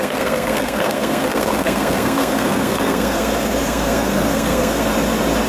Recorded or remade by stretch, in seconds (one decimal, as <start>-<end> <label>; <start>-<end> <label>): 0.0-4.9 remade; 4.9-5.5 recorded